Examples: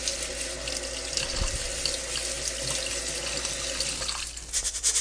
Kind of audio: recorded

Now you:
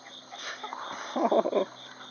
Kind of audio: recorded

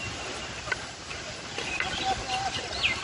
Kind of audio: recorded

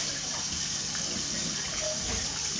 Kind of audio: recorded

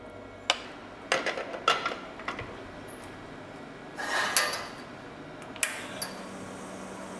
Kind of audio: recorded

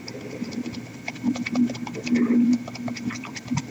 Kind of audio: remade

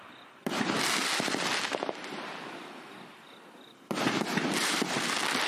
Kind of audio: remade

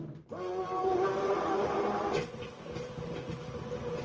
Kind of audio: recorded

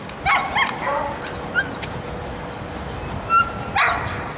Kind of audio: recorded